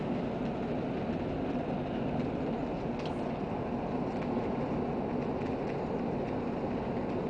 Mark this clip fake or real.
real